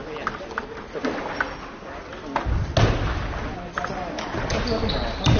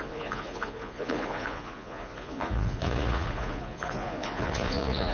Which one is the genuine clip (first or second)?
first